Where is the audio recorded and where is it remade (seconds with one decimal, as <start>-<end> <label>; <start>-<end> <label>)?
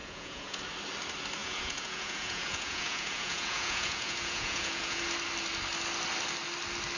0.0-0.6 remade; 0.6-1.4 recorded; 1.4-5.0 remade; 5.0-7.0 recorded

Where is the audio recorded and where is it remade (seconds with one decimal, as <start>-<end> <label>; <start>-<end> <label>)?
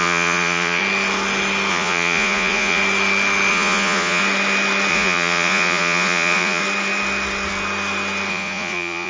0.0-0.8 remade; 0.8-1.7 recorded; 1.7-2.8 remade; 2.8-3.5 recorded; 3.5-4.2 remade; 4.2-4.9 recorded; 4.9-6.6 remade; 6.6-8.3 recorded; 8.3-9.1 remade